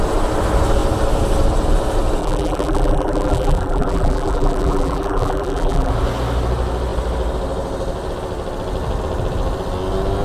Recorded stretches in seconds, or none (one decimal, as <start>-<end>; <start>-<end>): 0.0-2.2; 5.9-10.2